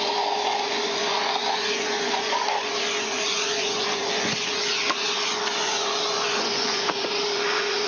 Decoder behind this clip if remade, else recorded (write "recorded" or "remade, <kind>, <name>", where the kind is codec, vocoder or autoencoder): remade, vocoder, Vocos